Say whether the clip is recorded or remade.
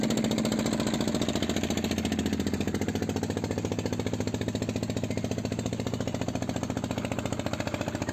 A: recorded